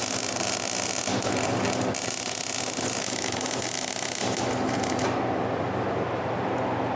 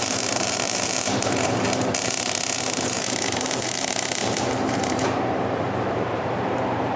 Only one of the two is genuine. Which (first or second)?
first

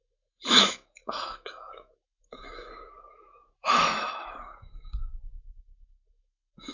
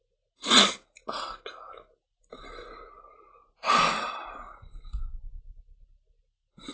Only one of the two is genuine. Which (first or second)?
second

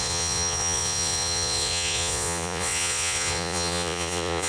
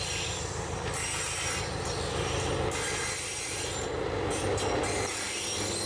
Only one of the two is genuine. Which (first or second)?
second